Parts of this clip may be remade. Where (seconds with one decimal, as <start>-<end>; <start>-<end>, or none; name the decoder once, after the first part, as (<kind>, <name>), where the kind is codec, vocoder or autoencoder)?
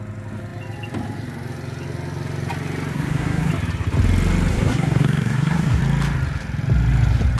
2.9-3.5 (codec, SNAC); 4.5-5.8